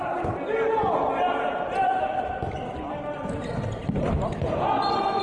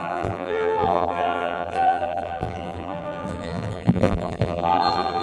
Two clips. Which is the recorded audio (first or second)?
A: first